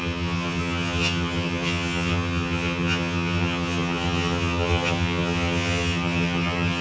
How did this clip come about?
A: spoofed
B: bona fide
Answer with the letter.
A